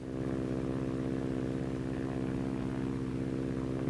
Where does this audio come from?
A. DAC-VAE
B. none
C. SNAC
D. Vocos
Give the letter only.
B